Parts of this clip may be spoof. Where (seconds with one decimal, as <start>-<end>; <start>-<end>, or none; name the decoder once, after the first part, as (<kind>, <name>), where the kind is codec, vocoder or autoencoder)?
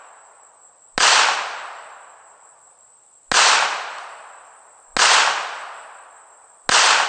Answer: none